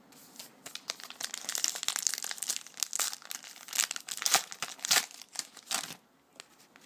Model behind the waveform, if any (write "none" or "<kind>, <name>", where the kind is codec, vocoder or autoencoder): none